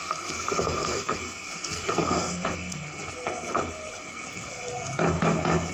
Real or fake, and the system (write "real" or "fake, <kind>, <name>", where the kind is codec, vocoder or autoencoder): fake, codec, SNAC